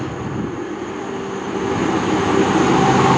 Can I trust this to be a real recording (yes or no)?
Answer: yes